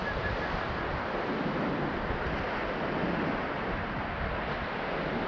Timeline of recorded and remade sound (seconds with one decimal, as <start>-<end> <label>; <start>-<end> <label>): 0.0-5.3 recorded